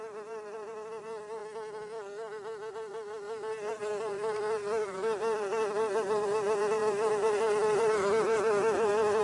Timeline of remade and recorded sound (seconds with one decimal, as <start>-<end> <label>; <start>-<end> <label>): 0.0-1.4 remade; 1.4-2.7 recorded; 2.7-9.2 remade